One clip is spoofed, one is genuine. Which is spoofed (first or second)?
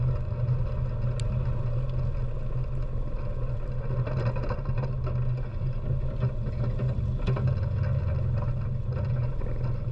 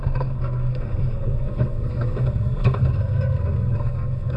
second